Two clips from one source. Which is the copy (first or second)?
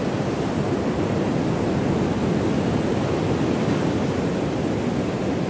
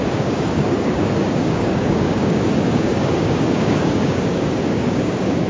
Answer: second